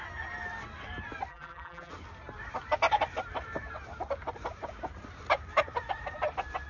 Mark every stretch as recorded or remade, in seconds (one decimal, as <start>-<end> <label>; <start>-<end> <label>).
0.0-1.3 recorded; 1.3-1.9 remade; 1.9-6.7 recorded